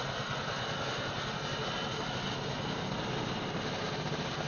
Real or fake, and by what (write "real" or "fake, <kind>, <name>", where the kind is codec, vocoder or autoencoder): real